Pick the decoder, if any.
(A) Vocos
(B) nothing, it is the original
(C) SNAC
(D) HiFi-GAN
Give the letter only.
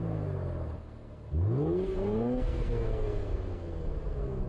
C